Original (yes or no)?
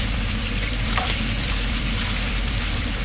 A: no